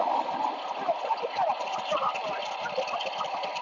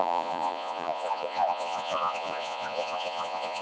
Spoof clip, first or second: second